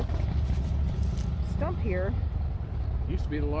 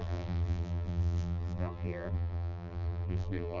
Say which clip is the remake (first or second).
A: second